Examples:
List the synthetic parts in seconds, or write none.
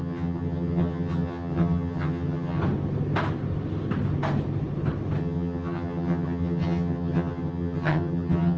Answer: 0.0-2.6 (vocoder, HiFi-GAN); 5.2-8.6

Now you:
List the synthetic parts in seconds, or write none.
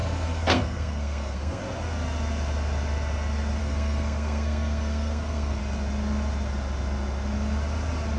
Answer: 0.0-1.6 (codec, SNAC); 3.6-5.6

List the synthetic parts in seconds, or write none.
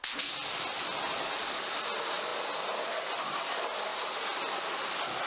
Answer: none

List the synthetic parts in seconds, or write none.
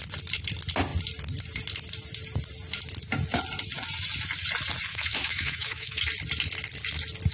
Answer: 4.9-6.0 (autoencoder, DAC-VAE)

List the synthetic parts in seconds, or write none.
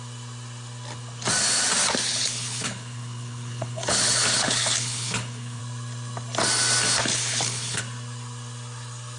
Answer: 2.1-5.6 (codec, HILCodec); 7.1-7.8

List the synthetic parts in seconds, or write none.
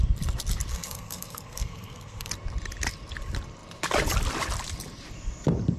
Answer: 0.7-2.3 (codec, SNAC)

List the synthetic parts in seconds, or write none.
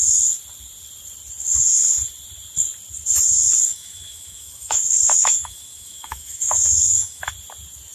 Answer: 3.7-7.2 (autoencoder, DAC-VAE)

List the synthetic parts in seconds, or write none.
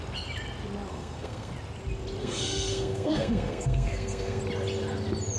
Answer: 0.9-1.5 (codec, SNAC); 2.2-4.4